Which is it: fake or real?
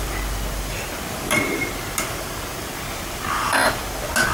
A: real